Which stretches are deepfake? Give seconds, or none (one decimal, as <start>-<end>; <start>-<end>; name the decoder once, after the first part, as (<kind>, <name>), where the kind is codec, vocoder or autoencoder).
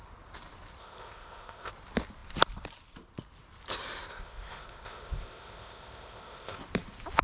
0.8-1.7 (codec, ZipCodec); 4.1-6.6